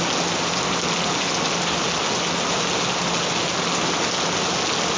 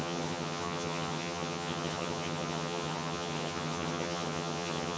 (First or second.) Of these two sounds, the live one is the first